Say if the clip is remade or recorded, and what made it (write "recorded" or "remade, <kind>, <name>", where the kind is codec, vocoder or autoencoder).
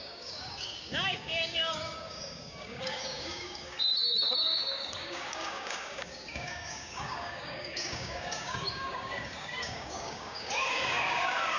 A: remade, codec, DAC